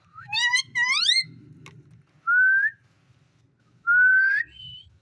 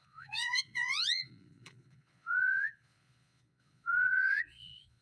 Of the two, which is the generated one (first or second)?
second